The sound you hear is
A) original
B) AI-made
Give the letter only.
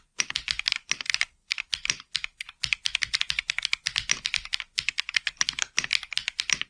A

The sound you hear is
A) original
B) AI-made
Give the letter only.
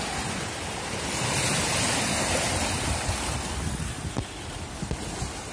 A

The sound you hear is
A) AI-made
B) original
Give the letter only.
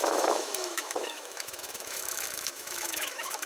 A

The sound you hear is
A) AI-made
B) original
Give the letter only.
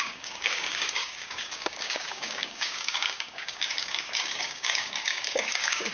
A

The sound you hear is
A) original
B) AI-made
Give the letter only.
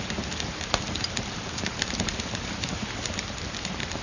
B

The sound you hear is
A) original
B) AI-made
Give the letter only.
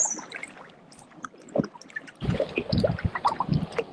A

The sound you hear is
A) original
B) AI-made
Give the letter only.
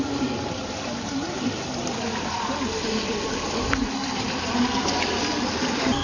A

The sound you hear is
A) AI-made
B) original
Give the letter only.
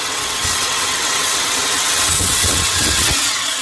A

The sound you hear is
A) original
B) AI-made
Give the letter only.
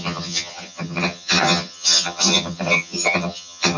B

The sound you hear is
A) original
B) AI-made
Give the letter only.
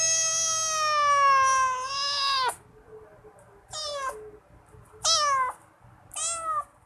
A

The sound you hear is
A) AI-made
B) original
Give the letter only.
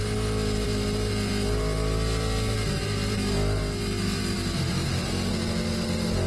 B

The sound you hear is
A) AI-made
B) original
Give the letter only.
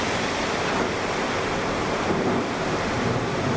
A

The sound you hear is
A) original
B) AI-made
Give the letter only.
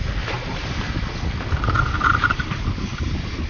A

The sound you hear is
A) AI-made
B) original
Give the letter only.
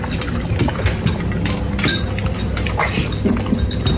B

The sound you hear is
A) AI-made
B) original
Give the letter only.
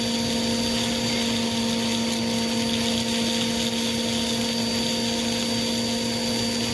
B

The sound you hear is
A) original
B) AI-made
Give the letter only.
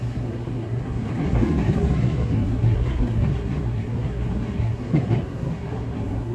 B